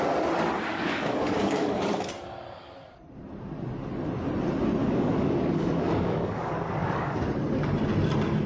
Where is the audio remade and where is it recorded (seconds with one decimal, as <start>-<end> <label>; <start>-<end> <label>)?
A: 0.0-0.7 recorded; 0.7-2.0 remade; 2.0-4.8 recorded; 4.8-7.2 remade; 7.2-8.5 recorded